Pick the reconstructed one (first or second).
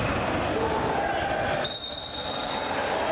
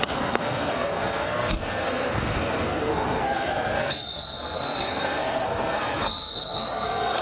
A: second